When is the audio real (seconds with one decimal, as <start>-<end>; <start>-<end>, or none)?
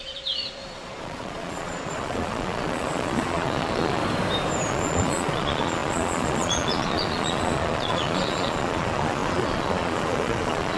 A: 4.0-4.7